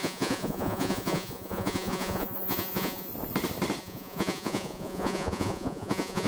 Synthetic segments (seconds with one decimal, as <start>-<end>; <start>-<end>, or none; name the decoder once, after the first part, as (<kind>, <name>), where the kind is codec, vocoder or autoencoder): 0.0-3.1 (vocoder, Vocos); 3.8-6.3